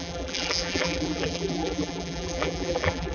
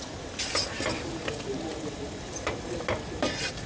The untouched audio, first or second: second